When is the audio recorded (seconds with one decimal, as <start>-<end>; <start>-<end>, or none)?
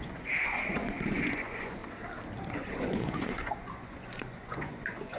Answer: 1.8-2.5